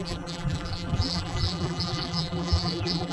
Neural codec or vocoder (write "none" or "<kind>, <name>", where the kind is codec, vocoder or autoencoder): vocoder, BigVGAN v2